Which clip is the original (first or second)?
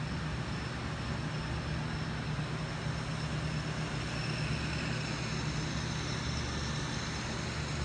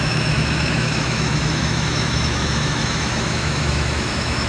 first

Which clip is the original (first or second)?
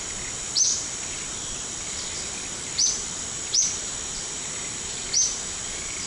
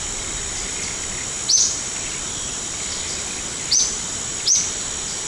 second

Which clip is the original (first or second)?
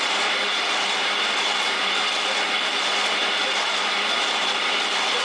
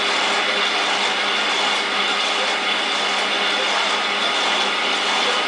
second